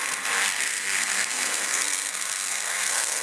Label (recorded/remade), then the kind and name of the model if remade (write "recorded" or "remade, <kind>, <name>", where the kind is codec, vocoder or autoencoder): remade, codec, SNAC